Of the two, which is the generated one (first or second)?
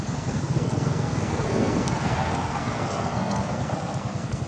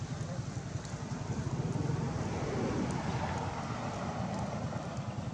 first